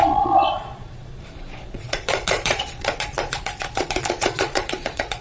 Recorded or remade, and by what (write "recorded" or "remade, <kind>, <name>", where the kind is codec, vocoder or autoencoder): remade, vocoder, Vocos